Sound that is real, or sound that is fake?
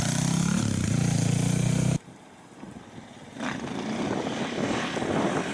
real